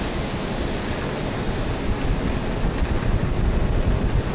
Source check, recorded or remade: recorded